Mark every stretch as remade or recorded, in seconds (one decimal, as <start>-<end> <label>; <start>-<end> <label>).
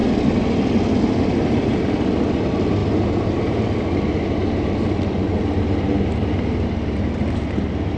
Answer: 0.0-8.0 recorded